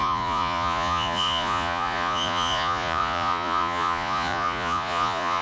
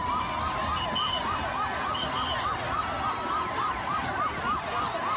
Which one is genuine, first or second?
second